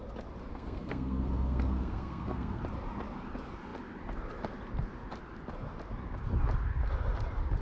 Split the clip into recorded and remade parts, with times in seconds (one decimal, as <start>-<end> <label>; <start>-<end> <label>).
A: 0.0-0.5 recorded; 0.5-2.6 remade; 2.6-7.6 recorded